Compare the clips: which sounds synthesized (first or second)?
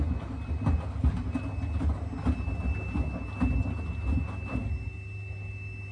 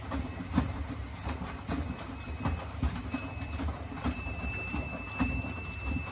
second